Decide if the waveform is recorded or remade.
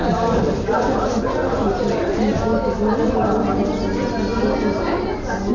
recorded